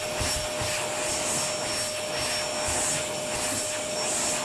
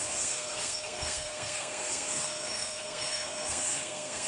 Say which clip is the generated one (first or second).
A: second